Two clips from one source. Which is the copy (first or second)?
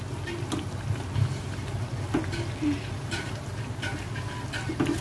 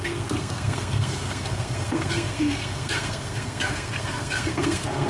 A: second